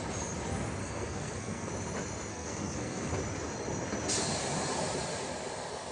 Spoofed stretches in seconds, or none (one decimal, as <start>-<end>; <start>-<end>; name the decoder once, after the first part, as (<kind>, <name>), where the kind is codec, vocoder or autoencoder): 0.8-1.7 (codec, SNAC); 2.3-3.1